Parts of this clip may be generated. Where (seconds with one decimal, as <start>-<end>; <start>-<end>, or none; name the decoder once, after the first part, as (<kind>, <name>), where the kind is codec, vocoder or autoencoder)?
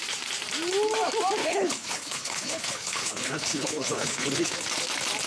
1.4-4.6 (codec, HILCodec)